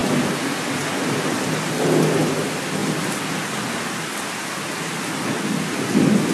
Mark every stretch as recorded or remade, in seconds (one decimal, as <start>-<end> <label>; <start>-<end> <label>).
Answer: 0.0-6.3 recorded